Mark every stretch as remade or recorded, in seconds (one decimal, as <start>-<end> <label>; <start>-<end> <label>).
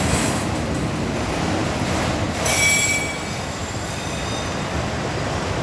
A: 0.0-1.6 recorded; 1.6-3.0 remade; 3.0-3.6 recorded; 3.6-4.9 remade; 4.9-5.6 recorded